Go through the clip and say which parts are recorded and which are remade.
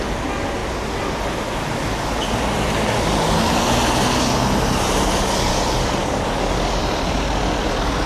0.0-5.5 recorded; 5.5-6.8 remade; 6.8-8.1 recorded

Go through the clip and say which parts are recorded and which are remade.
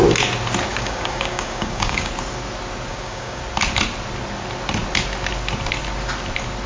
0.0-0.7 recorded; 0.7-2.1 remade; 2.1-2.9 recorded; 2.9-3.4 remade; 3.4-6.7 recorded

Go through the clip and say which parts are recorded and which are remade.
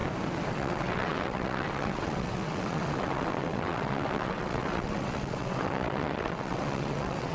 0.0-0.5 recorded; 0.5-7.3 remade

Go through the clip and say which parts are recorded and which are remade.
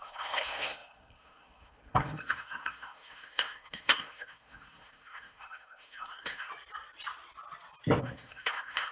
0.0-6.5 remade; 6.5-8.0 recorded; 8.0-8.9 remade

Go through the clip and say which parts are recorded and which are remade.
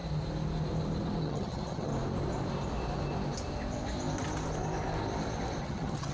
0.0-1.2 recorded; 1.2-1.9 remade; 1.9-5.6 recorded; 5.6-6.1 remade